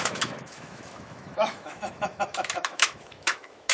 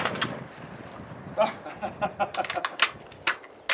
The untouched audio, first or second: second